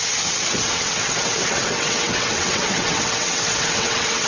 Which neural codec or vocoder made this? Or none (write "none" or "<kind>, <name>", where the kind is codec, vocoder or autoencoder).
vocoder, WaveNeXt